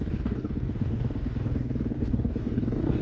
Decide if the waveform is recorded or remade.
remade